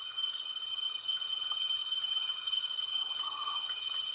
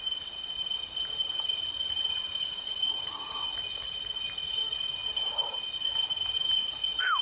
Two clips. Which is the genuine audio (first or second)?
second